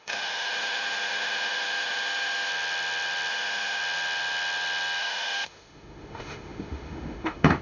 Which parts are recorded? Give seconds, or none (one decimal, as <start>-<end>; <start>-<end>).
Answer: 2.5-3.3; 3.8-5.0